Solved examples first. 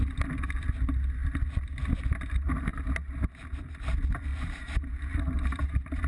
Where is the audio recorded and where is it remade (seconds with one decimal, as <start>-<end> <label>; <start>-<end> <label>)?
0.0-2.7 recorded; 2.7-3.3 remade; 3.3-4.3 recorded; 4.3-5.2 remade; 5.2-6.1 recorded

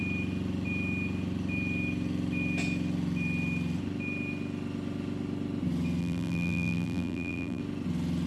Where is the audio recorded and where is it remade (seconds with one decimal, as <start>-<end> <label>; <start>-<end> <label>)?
0.0-6.0 recorded; 6.0-7.6 remade; 7.6-8.3 recorded

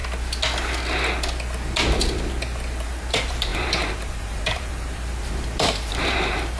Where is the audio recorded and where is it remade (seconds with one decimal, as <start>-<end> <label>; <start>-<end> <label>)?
0.0-2.8 recorded; 2.8-6.6 remade